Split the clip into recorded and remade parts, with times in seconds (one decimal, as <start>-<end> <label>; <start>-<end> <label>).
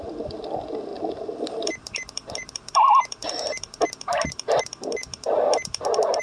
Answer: 0.0-0.9 recorded; 0.9-4.6 remade; 4.6-6.2 recorded